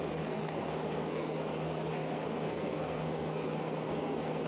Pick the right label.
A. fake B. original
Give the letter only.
A